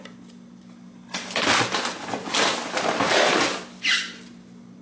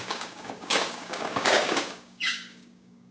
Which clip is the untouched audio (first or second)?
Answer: first